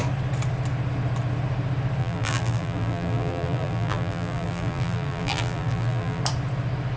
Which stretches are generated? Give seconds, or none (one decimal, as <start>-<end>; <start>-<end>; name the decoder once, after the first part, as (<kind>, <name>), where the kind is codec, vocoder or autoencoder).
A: 2.0-6.2 (vocoder, BigVGAN v2)